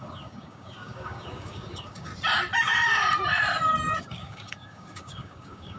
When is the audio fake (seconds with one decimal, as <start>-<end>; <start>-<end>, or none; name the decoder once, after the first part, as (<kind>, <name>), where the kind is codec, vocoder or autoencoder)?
0.0-2.1 (codec, DAC); 4.0-5.8

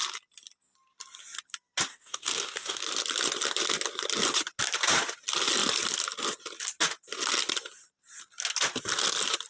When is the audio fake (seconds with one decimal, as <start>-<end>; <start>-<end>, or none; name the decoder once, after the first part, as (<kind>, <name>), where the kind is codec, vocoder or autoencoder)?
1.9-2.8 (codec, DAC)